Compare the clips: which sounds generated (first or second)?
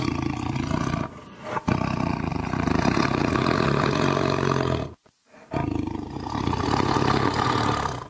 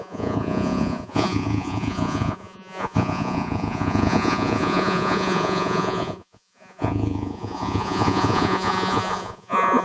second